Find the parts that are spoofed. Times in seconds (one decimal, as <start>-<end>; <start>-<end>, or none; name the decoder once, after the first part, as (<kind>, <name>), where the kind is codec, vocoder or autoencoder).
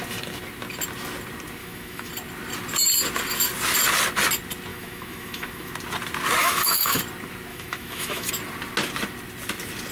1.6-2.1 (autoencoder, DAC-VAE); 4.7-5.7; 6.4-7.0; 7.5-8.3